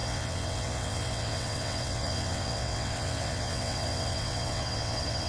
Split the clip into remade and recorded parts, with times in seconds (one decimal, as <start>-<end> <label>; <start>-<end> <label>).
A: 0.0-5.3 remade